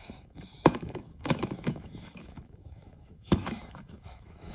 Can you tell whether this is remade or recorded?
remade